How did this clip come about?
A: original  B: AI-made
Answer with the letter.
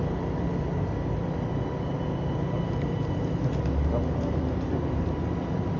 A